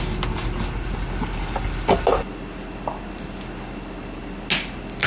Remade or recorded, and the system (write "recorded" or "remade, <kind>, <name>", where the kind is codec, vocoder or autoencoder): recorded